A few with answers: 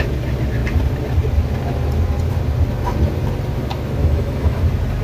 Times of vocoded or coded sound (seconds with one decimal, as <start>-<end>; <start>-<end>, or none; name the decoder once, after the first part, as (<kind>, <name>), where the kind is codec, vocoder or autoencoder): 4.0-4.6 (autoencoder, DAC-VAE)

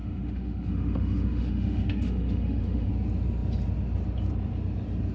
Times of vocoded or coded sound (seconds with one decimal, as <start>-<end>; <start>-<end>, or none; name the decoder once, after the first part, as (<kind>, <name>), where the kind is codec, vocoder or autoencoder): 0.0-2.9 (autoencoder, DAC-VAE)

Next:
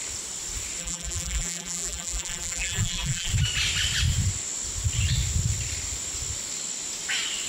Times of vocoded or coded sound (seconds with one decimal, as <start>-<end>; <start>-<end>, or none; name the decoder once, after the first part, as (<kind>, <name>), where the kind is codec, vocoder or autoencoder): 0.8-3.3 (vocoder, BigVGAN v2)